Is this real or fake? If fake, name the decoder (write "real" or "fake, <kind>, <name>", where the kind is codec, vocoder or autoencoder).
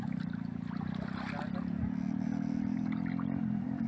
fake, vocoder, BigVGAN v2